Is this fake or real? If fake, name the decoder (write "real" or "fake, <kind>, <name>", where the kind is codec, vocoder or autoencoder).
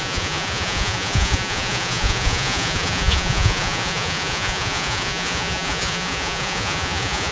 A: fake, vocoder, Vocos